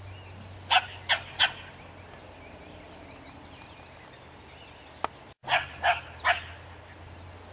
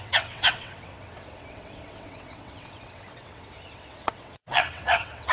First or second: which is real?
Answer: first